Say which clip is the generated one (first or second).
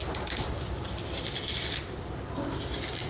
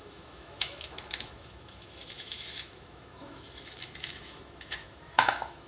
second